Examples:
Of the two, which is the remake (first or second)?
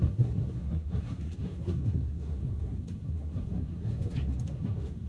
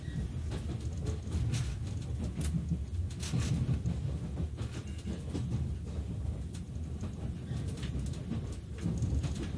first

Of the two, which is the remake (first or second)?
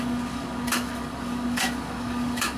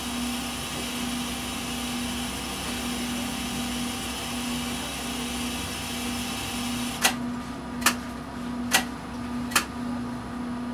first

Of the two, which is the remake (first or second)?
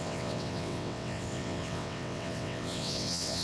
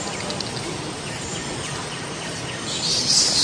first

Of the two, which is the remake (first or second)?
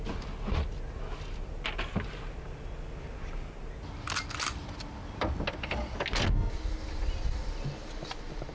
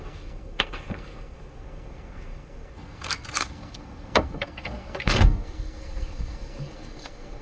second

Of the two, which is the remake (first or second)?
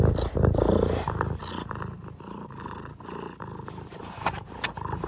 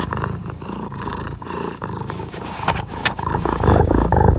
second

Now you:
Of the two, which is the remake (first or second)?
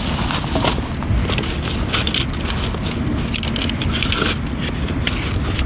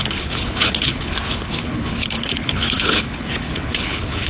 second